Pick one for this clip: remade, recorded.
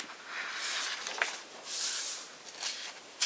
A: recorded